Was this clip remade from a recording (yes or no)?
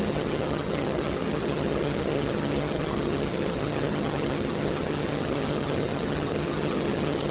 yes